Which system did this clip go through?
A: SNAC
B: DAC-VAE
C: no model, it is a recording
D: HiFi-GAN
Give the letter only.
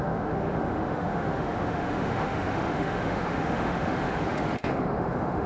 B